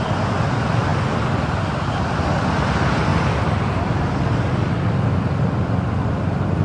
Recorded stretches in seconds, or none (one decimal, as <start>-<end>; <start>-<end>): 0.0-6.6